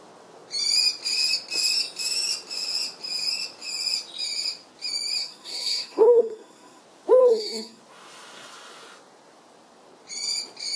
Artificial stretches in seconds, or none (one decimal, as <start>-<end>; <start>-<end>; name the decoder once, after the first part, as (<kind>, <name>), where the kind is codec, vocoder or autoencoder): 5.2-6.8 (codec, SNAC); 7.2-7.8